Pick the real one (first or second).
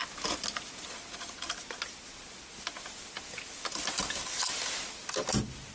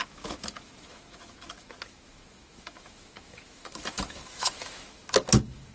first